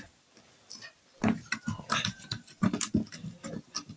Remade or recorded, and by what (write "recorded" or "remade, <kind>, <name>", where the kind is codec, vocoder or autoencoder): recorded